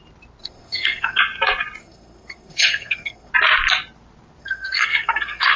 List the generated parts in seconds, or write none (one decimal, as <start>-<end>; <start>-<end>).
0.4-1.2; 1.8-3.3; 4.4-5.6